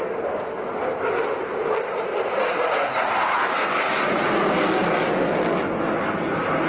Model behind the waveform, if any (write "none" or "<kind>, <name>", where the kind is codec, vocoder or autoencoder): none